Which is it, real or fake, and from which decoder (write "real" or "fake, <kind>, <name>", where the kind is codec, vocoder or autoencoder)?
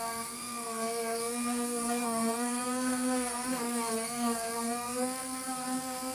fake, codec, SNAC